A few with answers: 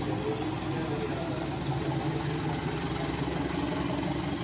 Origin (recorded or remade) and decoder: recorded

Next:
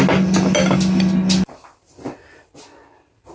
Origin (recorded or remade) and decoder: recorded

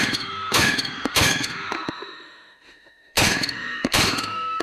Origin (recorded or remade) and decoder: remade, autoencoder, DAC-VAE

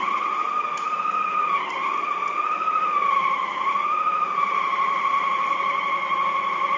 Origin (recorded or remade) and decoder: recorded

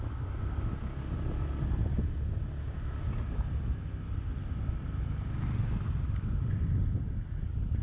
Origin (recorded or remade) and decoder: recorded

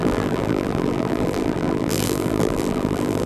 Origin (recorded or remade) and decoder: remade, vocoder, BigVGAN v2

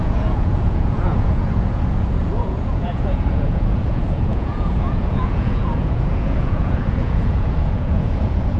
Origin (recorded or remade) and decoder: remade, vocoder, Vocos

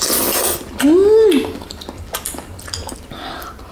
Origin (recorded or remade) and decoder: recorded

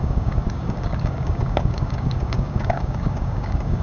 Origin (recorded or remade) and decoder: remade, codec, DAC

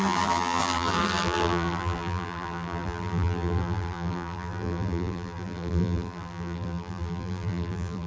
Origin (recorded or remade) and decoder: remade, vocoder, BigVGAN v2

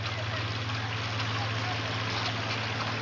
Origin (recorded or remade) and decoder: recorded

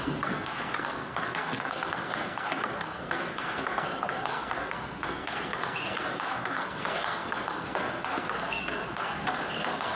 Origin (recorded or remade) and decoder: remade, codec, SNAC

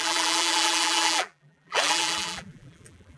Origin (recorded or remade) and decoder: remade, vocoder, BigVGAN v2